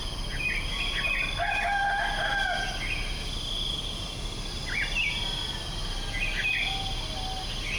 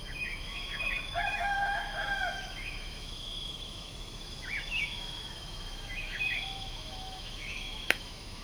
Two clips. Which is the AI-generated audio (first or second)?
second